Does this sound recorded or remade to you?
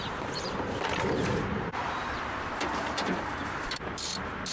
remade